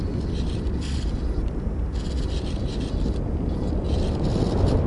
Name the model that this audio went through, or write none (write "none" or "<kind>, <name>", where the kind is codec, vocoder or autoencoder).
none